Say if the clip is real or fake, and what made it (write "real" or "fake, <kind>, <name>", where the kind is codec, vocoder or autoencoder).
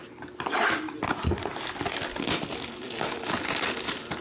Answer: real